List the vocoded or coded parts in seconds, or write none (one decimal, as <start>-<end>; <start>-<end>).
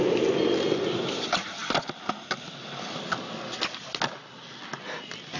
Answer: none